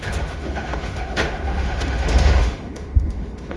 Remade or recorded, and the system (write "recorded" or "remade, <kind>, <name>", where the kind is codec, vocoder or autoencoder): remade, autoencoder, DAC-VAE